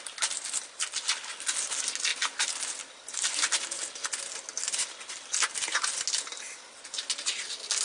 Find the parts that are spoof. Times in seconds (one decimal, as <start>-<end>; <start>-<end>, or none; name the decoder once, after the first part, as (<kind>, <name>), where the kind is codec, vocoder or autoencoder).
none